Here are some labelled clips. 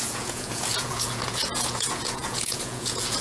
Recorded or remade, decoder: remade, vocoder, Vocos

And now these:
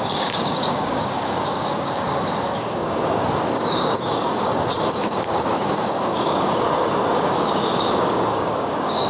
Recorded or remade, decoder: remade, codec, DAC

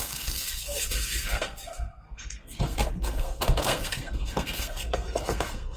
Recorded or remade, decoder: remade, codec, SNAC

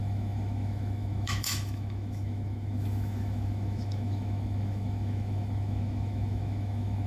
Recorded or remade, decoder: remade, autoencoder, DAC-VAE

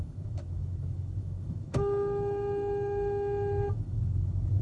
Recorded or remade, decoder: remade, autoencoder, DAC-VAE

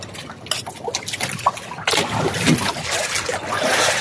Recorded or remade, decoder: recorded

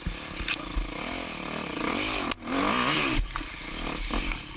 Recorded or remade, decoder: recorded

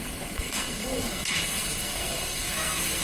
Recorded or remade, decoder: remade, codec, SNAC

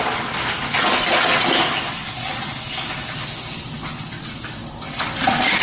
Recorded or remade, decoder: recorded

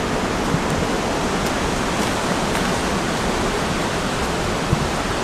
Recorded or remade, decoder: recorded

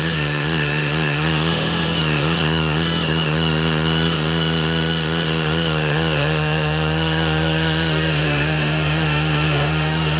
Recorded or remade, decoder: remade, autoencoder, DAC-VAE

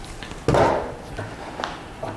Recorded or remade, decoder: recorded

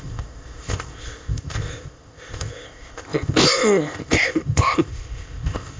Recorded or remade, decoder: remade, codec, ZipCodec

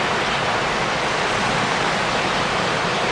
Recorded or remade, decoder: recorded